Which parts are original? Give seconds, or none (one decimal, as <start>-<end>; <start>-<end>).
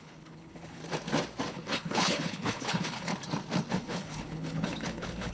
0.8-1.5; 3.1-3.7